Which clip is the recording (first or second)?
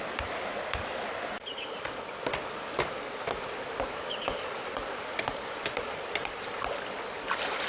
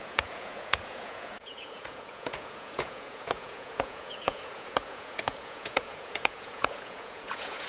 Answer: first